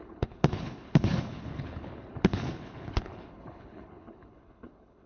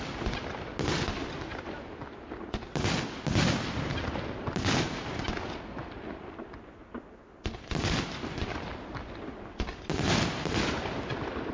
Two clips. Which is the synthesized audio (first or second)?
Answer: first